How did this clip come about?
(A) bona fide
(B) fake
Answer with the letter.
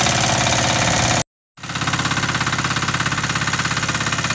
A